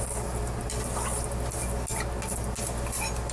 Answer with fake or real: real